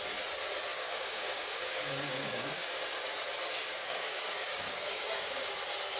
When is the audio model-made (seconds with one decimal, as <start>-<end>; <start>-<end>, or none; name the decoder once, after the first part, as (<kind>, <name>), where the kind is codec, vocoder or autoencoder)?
0.7-2.8 (codec, DAC); 3.7-5.5